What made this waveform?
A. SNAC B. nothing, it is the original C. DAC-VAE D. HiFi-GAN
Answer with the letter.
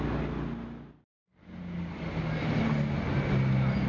B